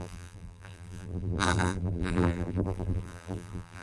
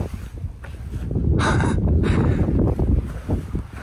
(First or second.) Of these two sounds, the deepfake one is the first